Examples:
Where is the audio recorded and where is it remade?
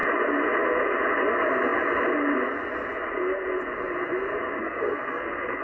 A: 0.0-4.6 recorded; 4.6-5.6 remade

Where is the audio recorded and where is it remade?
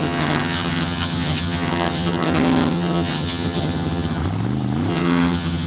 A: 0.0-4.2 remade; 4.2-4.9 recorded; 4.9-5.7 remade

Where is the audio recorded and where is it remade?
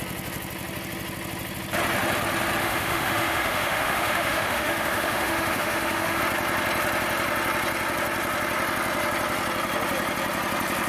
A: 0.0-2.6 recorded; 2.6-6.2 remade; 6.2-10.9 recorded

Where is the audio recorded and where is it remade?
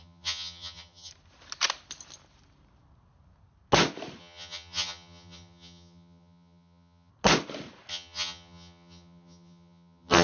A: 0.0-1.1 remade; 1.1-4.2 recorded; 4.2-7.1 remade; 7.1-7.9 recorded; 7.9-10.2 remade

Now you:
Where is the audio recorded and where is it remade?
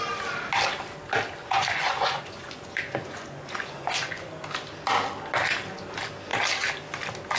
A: 0.0-1.4 recorded; 1.4-4.3 remade; 4.3-7.4 recorded